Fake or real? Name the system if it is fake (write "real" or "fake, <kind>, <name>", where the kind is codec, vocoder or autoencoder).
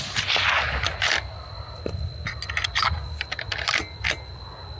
real